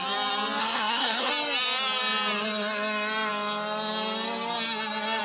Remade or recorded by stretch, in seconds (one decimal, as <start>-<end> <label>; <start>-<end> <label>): 0.0-0.6 recorded; 0.6-1.3 remade; 1.3-5.2 recorded

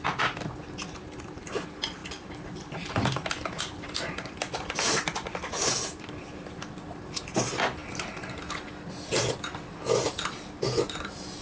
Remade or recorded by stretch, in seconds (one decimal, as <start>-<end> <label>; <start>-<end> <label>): 0.0-2.0 recorded; 2.0-6.2 remade; 6.2-11.4 recorded

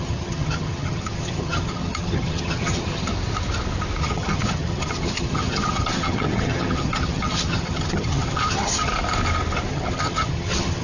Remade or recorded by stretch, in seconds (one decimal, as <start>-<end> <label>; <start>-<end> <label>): 0.0-3.1 remade; 3.1-4.0 recorded; 4.0-8.9 remade; 8.9-9.7 recorded; 9.7-10.8 remade